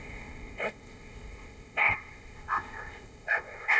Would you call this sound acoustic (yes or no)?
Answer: no